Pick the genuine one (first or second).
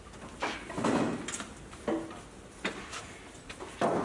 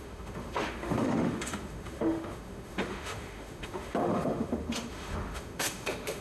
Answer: first